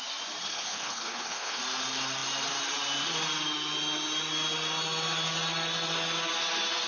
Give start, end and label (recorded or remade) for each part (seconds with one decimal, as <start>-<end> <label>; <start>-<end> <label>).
0.0-0.5 recorded; 0.5-1.6 remade; 1.6-6.9 recorded